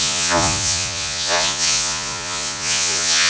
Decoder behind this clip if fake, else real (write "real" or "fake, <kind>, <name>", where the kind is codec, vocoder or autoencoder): fake, vocoder, Vocos